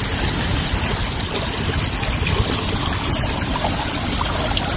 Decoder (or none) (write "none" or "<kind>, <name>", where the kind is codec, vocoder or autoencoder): none